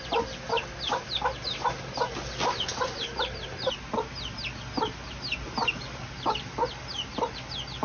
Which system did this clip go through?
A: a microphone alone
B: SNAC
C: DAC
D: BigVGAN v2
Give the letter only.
A